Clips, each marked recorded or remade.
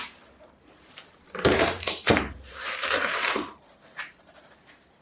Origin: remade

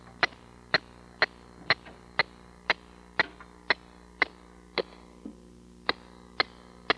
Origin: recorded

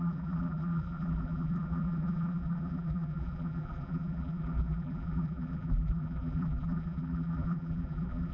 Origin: remade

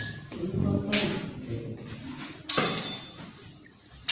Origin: recorded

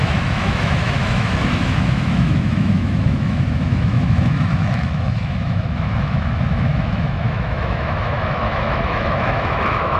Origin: remade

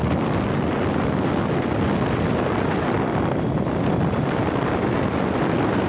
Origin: recorded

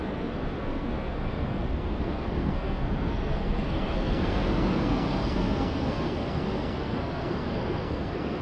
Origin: remade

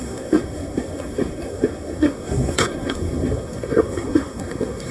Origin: remade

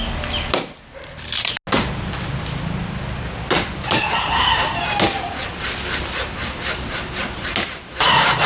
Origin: recorded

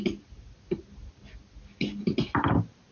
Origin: recorded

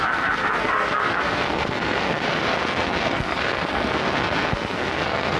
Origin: remade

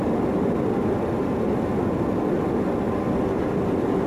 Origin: recorded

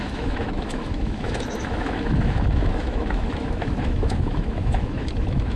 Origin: remade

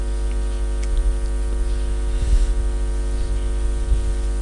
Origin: recorded